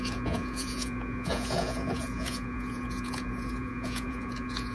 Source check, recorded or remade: remade